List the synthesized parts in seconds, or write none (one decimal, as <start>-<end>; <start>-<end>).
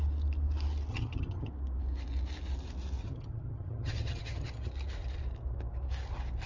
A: 0.9-1.5; 3.0-4.7